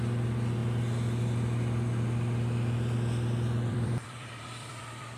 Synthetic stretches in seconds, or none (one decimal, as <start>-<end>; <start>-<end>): 0.0-0.6; 3.7-5.2